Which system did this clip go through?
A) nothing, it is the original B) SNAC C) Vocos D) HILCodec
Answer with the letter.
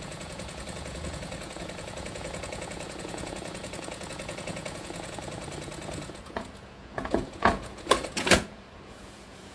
C